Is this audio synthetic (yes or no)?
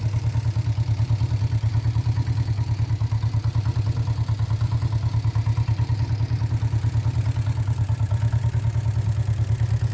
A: no